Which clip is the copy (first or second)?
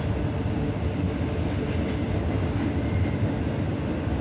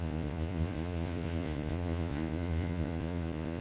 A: second